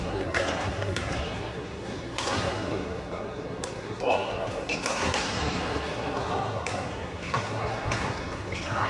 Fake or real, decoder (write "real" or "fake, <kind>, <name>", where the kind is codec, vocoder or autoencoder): fake, codec, SNAC